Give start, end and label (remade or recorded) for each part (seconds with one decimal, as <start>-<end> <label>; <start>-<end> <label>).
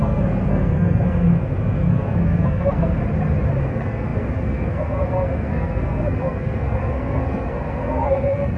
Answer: 0.0-3.0 remade; 3.0-3.6 recorded; 3.6-8.6 remade